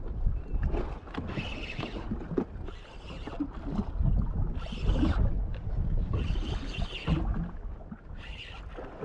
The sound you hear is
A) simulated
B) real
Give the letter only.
B